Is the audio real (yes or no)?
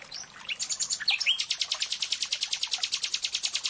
yes